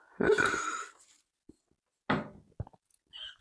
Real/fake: real